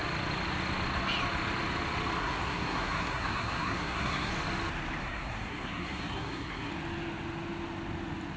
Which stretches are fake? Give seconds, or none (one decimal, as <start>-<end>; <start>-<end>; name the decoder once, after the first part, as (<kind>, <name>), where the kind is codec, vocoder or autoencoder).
2.2-4.3 (codec, SNAC); 5.0-6.7